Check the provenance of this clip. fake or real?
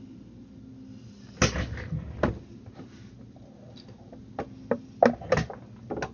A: real